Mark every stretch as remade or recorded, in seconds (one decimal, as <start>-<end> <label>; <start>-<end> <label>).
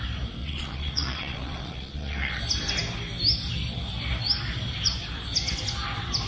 0.0-0.4 recorded; 0.4-2.4 remade; 2.4-6.3 recorded